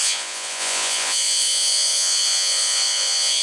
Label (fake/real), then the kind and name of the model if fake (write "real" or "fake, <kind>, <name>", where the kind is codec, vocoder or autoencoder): fake, vocoder, Vocos